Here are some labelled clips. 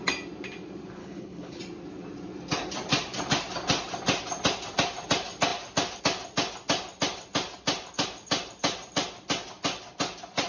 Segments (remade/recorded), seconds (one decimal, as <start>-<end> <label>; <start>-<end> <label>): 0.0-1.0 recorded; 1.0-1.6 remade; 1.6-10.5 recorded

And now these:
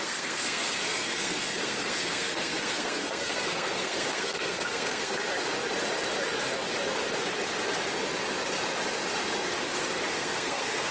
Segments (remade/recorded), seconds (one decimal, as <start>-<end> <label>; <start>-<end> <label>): 0.0-5.2 remade; 5.2-10.2 recorded; 10.2-10.9 remade

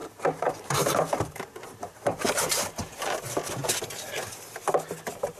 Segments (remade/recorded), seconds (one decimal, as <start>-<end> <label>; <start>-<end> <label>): 0.0-3.2 remade; 3.2-5.4 recorded

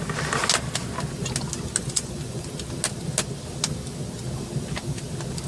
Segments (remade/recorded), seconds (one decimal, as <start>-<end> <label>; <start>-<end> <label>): 0.0-1.8 recorded; 1.8-2.5 remade; 2.5-5.5 recorded